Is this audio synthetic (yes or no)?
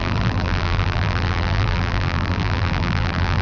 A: yes